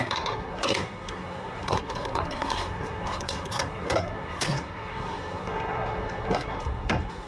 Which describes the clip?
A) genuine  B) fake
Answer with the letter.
B